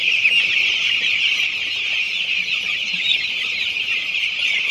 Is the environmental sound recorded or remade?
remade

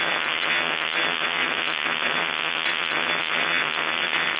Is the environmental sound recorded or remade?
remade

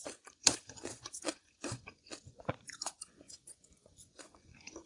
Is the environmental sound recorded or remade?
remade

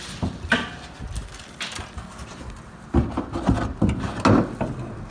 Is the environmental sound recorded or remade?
recorded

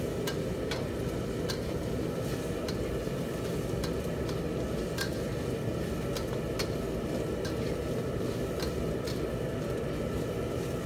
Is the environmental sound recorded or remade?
recorded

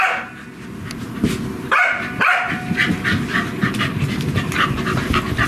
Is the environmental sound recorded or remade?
recorded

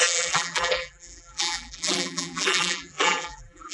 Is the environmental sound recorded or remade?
remade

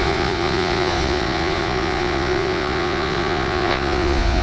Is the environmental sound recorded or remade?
remade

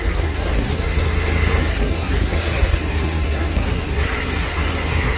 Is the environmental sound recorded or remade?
remade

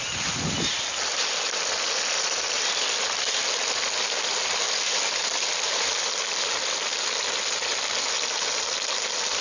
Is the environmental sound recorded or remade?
recorded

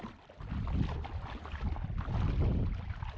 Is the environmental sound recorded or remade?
recorded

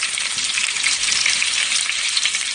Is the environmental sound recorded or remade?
remade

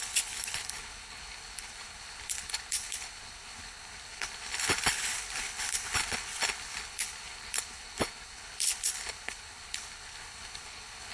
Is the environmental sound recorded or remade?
remade